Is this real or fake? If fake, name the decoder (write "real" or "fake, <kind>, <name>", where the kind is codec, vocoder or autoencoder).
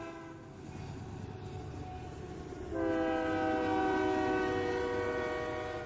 real